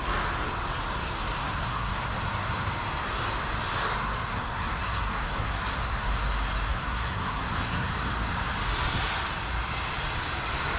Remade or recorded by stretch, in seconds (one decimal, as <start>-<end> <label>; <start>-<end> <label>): 0.0-1.4 recorded; 1.4-1.9 remade; 1.9-4.3 recorded; 4.3-5.6 remade; 5.6-6.7 recorded; 6.7-7.9 remade; 7.9-10.8 recorded